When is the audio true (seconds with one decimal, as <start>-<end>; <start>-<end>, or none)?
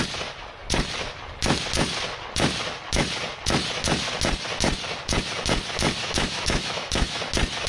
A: 0.0-6.0; 7.2-7.7